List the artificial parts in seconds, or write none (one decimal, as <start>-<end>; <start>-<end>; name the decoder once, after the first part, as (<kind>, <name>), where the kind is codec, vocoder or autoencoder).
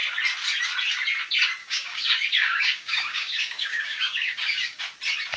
1.6-4.8 (codec, DAC)